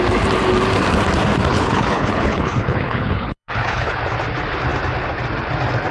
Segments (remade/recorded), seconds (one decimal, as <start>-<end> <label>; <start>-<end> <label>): 0.0-1.5 recorded; 1.5-4.0 remade; 4.0-5.9 recorded